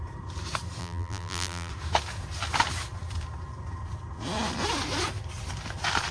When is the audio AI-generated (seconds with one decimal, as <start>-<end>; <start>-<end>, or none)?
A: 0.8-1.7